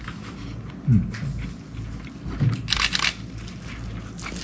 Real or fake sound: real